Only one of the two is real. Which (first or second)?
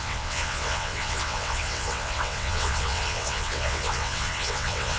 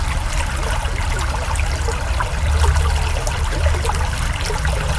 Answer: second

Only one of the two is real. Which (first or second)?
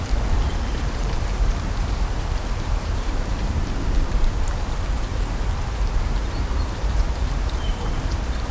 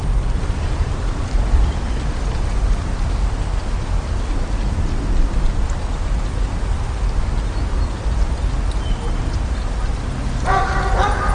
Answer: second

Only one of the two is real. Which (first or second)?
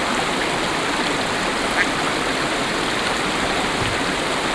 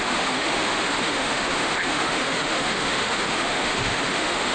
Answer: first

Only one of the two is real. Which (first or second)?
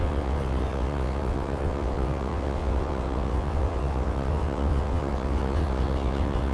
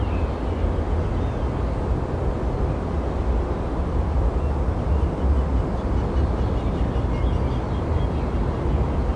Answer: second